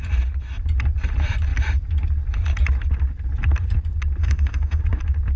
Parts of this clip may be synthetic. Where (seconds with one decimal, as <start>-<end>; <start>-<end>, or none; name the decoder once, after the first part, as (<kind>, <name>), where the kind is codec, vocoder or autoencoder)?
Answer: 4.2-4.8 (autoencoder, DAC-VAE)